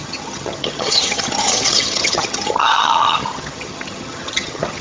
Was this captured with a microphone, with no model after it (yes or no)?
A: no